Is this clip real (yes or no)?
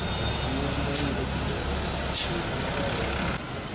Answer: yes